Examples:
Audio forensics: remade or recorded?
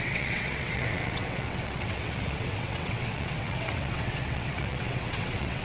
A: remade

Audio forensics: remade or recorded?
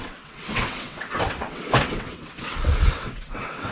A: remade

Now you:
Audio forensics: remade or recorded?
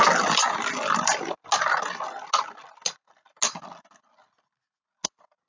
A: recorded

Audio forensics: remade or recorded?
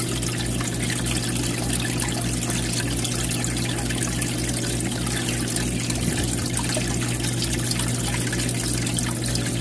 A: recorded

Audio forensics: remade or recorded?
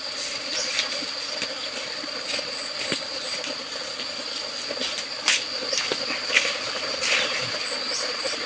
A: recorded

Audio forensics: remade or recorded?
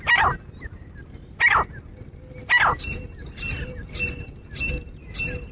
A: recorded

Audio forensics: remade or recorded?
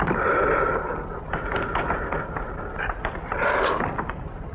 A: recorded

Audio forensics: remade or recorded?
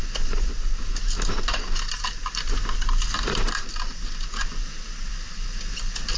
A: recorded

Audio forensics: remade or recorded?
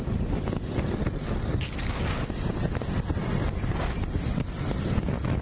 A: recorded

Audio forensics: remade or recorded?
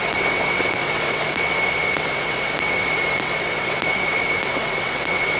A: remade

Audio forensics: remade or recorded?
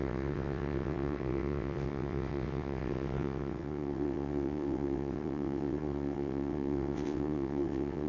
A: remade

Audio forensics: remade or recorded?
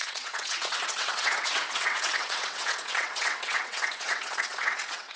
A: remade